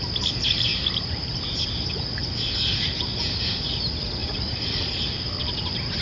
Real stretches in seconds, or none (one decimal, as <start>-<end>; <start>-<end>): 0.0-4.2; 4.9-6.0